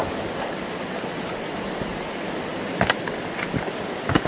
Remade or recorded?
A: recorded